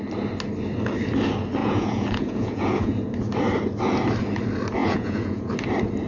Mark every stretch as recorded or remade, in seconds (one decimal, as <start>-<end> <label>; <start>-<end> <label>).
0.0-1.6 recorded; 1.6-3.0 remade; 3.0-4.8 recorded; 4.8-5.5 remade; 5.5-6.1 recorded